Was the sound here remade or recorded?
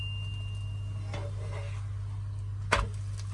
recorded